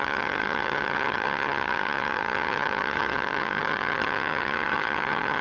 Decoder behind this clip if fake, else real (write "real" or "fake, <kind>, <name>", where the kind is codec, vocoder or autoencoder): fake, vocoder, HiFi-GAN